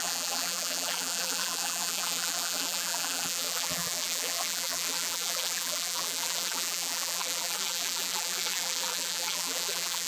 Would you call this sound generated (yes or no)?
yes